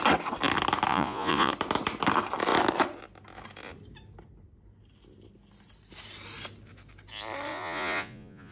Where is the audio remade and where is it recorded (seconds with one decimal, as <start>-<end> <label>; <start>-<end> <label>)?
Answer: 0.0-0.9 recorded; 0.9-1.5 remade; 1.5-7.5 recorded; 7.5-8.5 remade